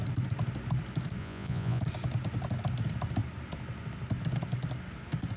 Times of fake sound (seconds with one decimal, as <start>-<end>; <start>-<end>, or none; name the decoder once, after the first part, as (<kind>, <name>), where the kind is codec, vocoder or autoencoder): 1.2-1.8 (vocoder, Vocos)